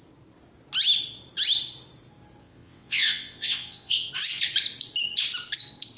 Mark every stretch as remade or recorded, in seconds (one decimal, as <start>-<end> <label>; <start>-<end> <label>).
0.0-2.4 recorded; 2.4-4.1 remade; 4.1-6.0 recorded